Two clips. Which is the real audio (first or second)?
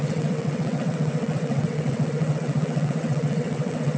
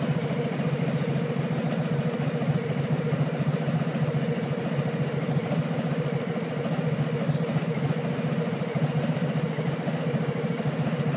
second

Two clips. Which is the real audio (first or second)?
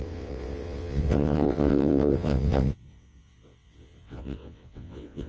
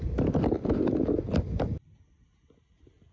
second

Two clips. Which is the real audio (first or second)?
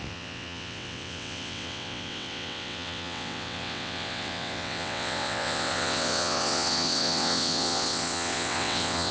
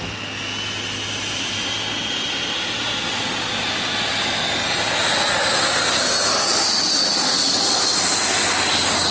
second